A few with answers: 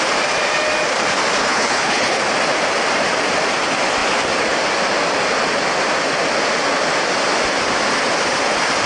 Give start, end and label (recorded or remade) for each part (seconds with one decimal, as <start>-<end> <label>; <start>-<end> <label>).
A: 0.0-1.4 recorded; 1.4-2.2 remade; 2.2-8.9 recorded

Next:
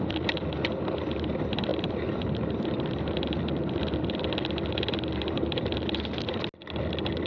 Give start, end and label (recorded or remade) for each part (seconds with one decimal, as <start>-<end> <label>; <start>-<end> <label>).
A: 0.0-7.3 recorded

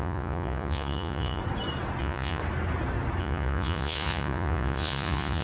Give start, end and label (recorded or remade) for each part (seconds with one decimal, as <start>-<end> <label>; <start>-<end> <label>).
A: 0.0-1.4 remade; 1.4-2.0 recorded; 2.0-2.4 remade; 2.4-3.2 recorded; 3.2-5.4 remade

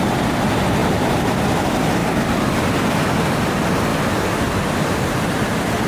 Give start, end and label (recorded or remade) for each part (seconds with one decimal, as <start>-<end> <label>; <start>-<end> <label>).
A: 0.0-5.9 recorded